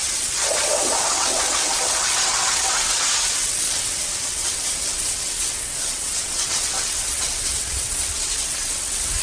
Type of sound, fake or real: fake